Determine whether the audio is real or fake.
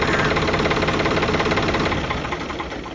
real